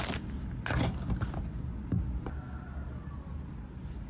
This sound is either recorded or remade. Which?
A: recorded